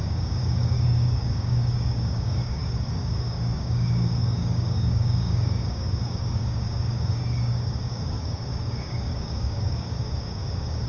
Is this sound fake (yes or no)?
yes